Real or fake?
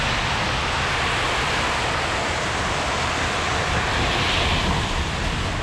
real